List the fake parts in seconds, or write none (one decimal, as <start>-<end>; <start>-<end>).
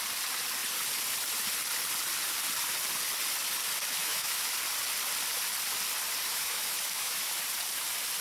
4.0-4.5; 6.3-7.3